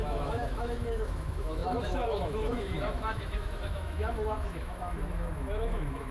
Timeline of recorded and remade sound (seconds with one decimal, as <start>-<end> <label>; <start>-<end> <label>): 0.0-6.1 remade